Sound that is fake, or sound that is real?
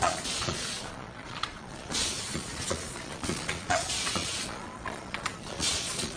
fake